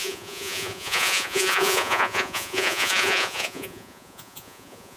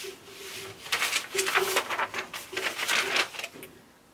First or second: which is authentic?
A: second